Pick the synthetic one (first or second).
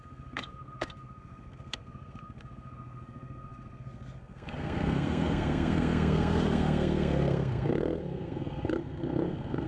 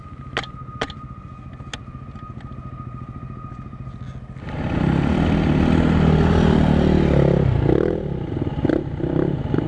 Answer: first